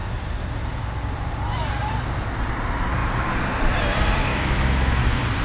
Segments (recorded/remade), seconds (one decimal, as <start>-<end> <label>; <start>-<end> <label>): 0.0-4.3 recorded; 4.3-5.0 remade; 5.0-5.4 recorded